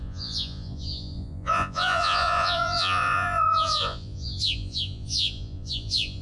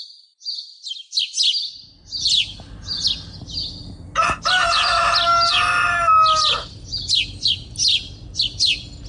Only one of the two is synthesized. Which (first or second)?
first